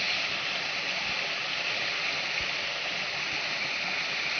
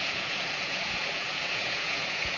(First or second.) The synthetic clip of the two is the second